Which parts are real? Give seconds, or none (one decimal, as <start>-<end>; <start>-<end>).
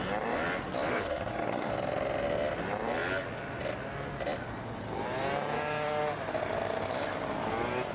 0.0-0.9; 1.7-7.9